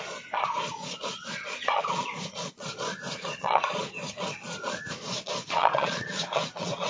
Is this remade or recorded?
remade